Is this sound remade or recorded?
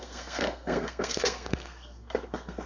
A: remade